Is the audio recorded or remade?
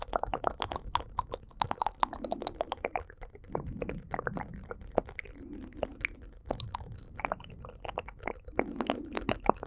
recorded